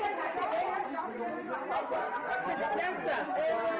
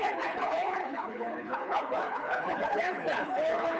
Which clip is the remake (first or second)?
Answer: second